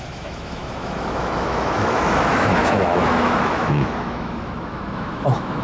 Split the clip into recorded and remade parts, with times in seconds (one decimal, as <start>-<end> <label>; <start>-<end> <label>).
0.0-5.6 remade